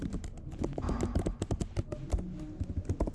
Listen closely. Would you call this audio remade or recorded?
recorded